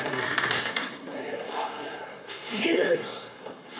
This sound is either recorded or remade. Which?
remade